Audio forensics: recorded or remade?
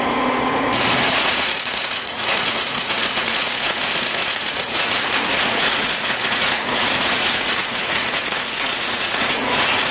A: remade